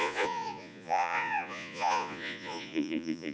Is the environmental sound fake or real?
fake